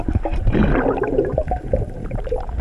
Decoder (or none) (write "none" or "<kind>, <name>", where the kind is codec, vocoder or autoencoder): vocoder, BigVGAN v2